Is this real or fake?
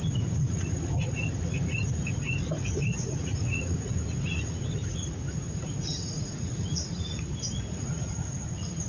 fake